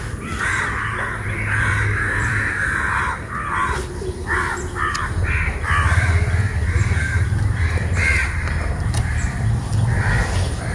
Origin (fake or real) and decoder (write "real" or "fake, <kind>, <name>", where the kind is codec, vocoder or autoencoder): fake, vocoder, BigVGAN v2